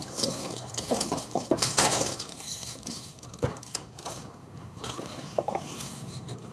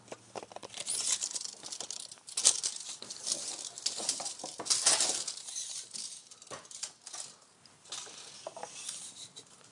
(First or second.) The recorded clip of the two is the second